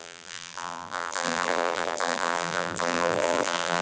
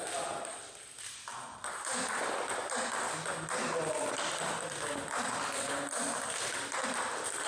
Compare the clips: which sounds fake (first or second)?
first